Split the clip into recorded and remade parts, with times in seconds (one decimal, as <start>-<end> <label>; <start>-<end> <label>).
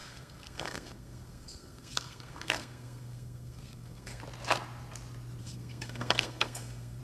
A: 0.0-4.2 remade; 4.2-5.4 recorded; 5.4-7.0 remade